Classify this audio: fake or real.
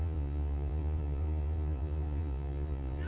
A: fake